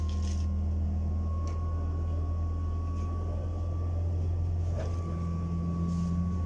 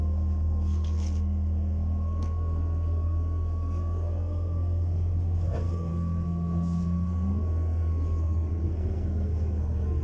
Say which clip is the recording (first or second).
first